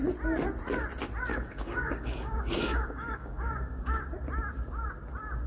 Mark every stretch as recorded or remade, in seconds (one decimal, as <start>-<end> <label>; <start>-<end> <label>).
0.0-1.3 recorded; 1.3-4.0 remade; 4.0-5.5 recorded